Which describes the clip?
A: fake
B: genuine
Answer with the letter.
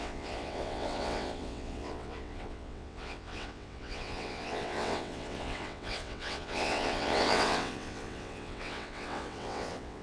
A